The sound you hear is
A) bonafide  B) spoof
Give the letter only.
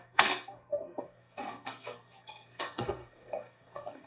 B